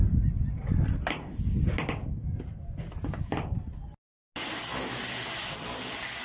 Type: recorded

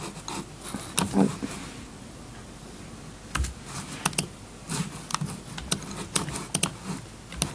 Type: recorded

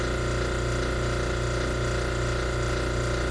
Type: recorded